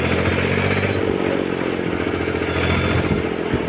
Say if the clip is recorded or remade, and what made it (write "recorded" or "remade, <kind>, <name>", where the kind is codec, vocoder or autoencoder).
recorded